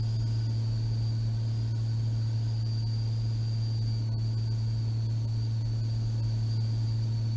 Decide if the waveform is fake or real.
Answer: real